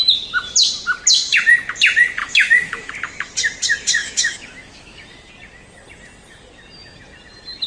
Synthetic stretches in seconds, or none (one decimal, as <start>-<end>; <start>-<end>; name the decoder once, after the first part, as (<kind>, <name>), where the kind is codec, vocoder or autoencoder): 2.2-2.9 (autoencoder, DAC-VAE); 4.0-5.3